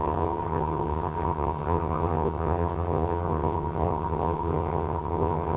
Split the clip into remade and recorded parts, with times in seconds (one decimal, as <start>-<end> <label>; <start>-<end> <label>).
0.0-5.6 remade

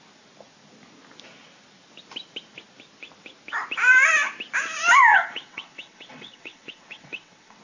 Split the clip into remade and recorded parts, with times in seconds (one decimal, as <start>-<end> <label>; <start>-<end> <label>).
0.0-5.1 recorded; 5.1-7.6 remade

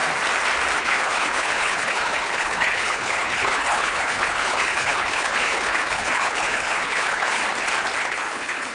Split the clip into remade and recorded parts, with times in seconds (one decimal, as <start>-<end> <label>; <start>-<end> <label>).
0.0-0.8 recorded; 0.8-7.4 remade; 7.4-8.0 recorded; 8.0-8.7 remade

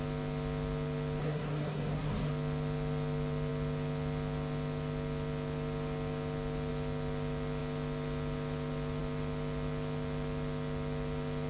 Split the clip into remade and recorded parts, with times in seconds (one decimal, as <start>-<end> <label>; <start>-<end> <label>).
0.0-1.2 recorded; 1.2-2.3 remade; 2.3-11.5 recorded

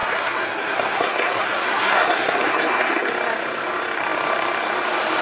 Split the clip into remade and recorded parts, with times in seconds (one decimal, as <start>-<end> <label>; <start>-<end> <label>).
0.0-3.1 remade; 3.1-5.2 recorded

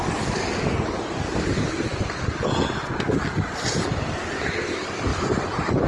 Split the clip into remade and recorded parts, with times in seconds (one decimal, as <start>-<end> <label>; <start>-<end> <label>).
0.0-5.9 recorded

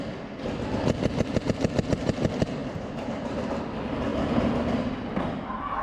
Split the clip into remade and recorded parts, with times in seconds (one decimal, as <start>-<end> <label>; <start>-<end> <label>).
0.0-2.6 recorded; 2.6-3.6 remade; 3.6-5.8 recorded

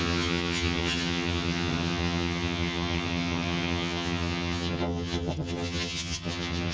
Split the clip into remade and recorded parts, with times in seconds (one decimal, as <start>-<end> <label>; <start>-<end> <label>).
0.0-6.7 remade